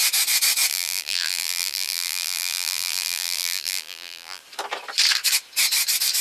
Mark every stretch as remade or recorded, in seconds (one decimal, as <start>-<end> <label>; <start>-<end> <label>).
0.0-0.7 recorded; 0.7-4.4 remade; 4.4-6.2 recorded